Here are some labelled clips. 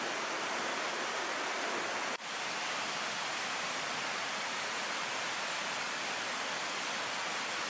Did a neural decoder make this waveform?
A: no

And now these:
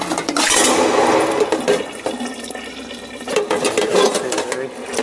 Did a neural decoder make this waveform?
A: no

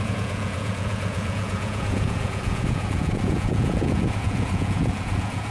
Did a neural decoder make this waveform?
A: yes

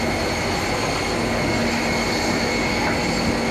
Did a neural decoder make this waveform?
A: no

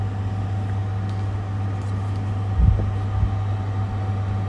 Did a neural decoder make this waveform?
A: no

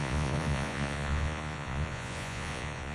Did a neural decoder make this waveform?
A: yes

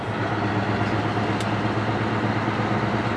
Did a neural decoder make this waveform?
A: no